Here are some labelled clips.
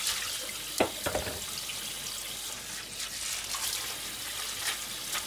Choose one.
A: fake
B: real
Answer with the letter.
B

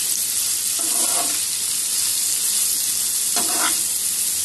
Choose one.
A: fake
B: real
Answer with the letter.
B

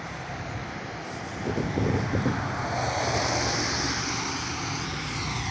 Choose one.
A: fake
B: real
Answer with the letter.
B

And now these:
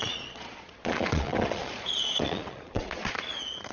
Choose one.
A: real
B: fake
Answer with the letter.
B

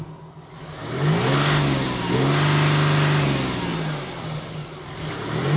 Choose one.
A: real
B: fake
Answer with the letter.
A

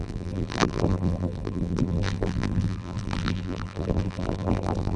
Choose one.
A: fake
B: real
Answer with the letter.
A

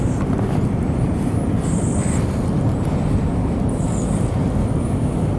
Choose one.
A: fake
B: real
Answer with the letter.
A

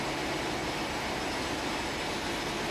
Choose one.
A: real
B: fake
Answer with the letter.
A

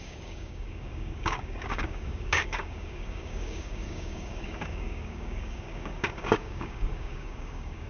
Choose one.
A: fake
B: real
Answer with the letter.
A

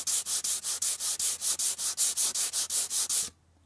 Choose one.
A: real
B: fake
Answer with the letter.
A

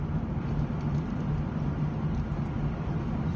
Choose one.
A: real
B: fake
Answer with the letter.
A